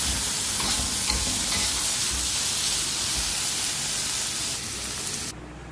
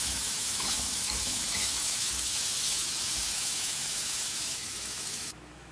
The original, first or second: first